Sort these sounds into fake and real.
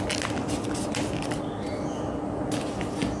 real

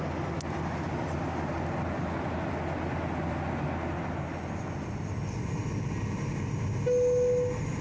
real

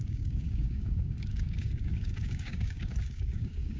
fake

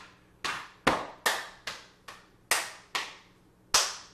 real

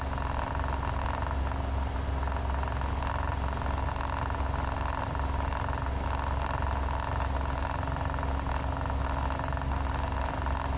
real